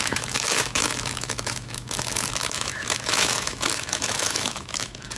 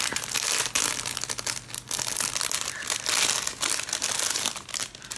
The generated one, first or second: first